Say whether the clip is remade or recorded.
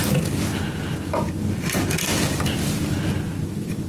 recorded